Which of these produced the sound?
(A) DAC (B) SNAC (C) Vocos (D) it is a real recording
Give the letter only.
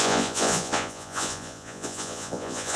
C